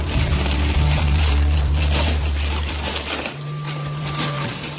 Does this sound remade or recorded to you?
remade